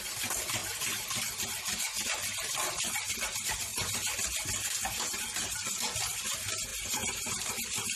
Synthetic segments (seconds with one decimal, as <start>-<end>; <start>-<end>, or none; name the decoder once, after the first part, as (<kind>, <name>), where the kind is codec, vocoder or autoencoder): 3.7-4.9 (vocoder, BigVGAN v2)